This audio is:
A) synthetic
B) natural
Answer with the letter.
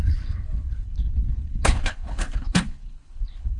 A